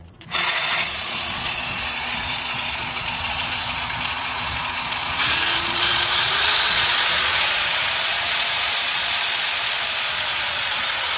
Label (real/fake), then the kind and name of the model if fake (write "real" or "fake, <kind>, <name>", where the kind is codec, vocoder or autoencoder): fake, vocoder, Vocos